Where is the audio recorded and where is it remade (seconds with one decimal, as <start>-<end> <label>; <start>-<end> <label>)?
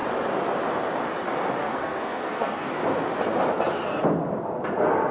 0.0-1.6 recorded; 1.6-2.7 remade; 2.7-5.1 recorded